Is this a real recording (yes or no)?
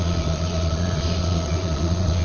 no